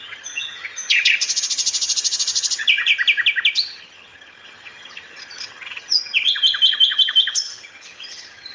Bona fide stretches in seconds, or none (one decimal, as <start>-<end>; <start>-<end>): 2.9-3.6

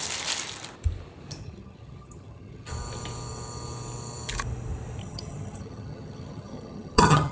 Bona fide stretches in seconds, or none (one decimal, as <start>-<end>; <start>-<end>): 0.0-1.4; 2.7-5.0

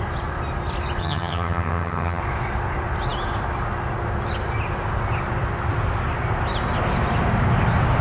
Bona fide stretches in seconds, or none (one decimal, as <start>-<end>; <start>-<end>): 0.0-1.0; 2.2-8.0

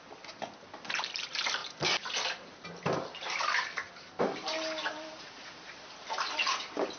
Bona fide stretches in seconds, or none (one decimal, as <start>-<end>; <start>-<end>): 0.0-7.0